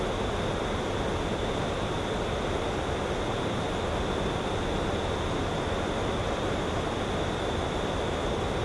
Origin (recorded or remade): recorded